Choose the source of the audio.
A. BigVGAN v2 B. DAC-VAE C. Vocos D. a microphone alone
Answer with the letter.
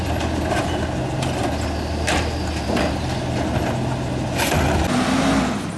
D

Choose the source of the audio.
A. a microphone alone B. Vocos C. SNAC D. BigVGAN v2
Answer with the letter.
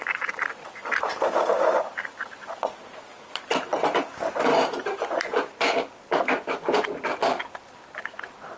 A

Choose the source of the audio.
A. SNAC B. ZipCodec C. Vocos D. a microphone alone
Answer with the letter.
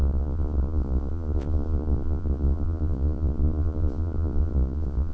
C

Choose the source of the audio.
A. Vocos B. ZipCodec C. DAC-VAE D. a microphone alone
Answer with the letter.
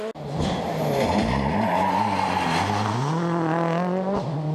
D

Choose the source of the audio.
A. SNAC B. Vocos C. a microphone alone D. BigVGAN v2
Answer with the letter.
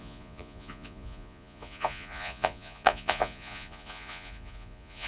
B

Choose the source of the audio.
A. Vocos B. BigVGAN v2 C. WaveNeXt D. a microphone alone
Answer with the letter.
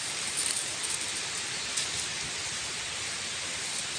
D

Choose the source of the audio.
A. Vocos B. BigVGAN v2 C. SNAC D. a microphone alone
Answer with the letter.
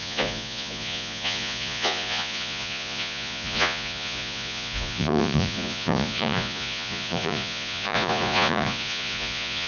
A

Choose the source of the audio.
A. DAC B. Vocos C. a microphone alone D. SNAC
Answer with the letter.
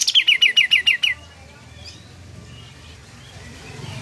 C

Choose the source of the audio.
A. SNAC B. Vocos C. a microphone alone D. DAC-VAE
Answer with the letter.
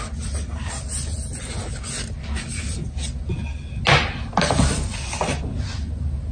C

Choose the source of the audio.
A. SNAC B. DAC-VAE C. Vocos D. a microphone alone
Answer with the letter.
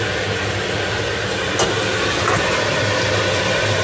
D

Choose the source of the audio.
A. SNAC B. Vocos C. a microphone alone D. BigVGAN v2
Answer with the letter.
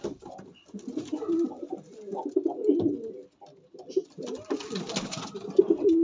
C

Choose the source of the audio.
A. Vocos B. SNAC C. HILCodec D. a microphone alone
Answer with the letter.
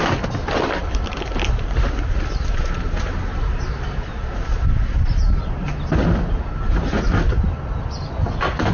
D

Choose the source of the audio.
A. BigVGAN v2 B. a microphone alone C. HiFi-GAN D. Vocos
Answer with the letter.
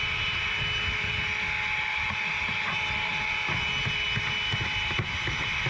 B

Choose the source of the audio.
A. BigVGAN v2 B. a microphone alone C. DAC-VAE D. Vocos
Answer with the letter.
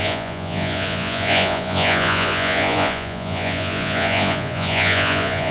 D